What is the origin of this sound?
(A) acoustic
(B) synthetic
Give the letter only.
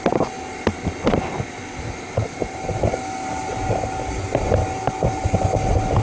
A